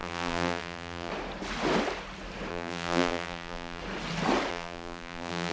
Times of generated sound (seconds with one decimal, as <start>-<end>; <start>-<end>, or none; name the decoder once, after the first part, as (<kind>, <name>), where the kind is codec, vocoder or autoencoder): 0.0-1.1 (vocoder, BigVGAN v2); 2.5-3.8; 4.5-5.5